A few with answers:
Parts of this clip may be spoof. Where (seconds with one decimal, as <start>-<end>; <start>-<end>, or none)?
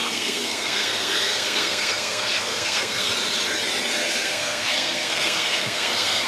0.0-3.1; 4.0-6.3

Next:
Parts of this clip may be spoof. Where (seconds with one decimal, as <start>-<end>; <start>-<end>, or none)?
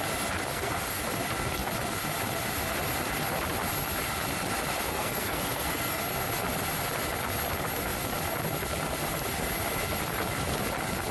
0.5-1.0; 4.9-6.0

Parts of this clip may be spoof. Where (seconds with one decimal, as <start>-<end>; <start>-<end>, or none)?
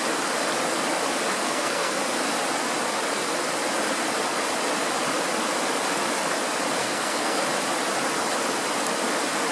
1.4-2.0; 6.8-7.4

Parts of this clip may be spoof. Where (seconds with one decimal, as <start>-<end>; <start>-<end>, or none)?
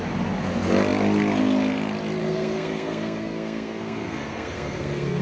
2.2-5.2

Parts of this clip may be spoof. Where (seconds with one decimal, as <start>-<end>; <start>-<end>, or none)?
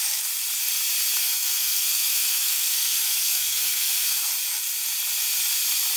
1.2-4.3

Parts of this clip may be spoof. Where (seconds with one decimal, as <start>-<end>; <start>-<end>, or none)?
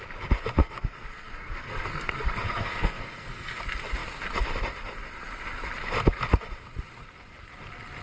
0.6-3.6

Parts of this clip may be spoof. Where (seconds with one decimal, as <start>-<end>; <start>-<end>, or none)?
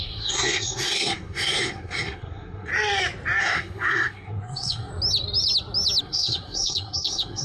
0.0-2.7; 3.4-4.9; 6.0-7.4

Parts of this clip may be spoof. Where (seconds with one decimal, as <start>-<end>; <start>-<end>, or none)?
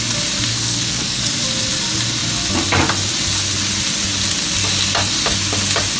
0.5-1.2